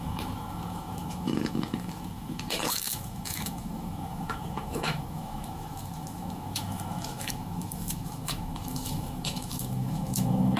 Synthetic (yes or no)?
yes